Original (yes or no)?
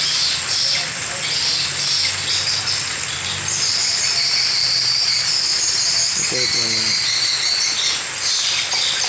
yes